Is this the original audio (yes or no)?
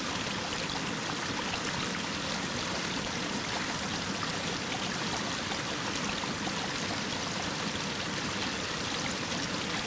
yes